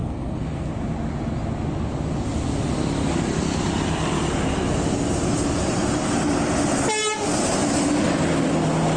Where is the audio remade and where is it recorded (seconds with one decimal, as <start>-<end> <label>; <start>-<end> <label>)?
0.0-0.7 remade; 0.7-9.0 recorded